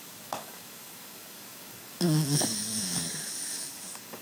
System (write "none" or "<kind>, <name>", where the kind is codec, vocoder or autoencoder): codec, DAC